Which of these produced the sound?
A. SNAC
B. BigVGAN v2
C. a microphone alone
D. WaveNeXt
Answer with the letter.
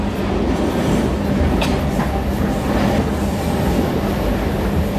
C